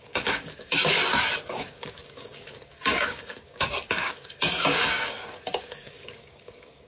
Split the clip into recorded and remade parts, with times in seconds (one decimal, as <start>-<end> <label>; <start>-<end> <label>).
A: 0.0-1.0 remade; 1.0-1.5 recorded; 1.5-6.9 remade